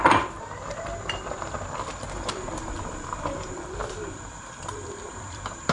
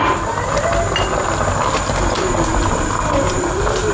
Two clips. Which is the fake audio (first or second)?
first